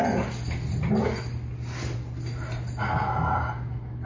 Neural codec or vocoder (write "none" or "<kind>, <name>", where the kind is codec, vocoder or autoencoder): none